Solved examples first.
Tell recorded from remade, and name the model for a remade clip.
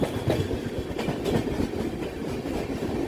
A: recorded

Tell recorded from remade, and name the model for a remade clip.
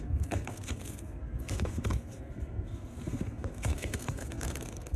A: remade, codec, SNAC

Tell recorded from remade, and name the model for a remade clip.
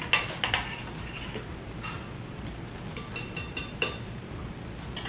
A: recorded